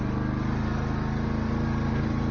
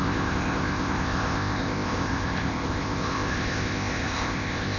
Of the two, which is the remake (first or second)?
second